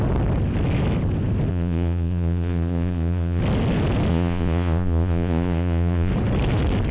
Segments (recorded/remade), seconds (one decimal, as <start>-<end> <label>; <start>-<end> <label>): 0.0-1.5 recorded; 1.5-3.4 remade; 3.4-4.1 recorded; 4.1-6.1 remade; 6.1-6.9 recorded